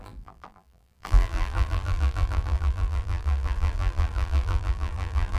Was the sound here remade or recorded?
remade